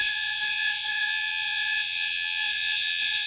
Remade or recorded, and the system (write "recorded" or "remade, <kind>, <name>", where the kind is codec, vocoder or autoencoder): remade, vocoder, WaveNeXt